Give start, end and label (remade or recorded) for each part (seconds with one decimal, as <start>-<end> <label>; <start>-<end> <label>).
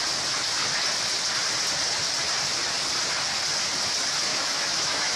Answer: 0.0-4.3 recorded; 4.3-5.2 remade